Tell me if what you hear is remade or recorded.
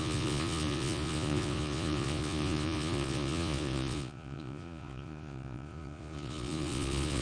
remade